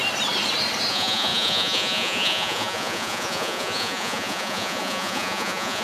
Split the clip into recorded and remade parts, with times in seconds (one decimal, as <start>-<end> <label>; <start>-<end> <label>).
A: 0.0-0.9 recorded; 0.9-5.8 remade